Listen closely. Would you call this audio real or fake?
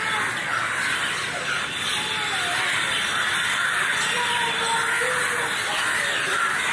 real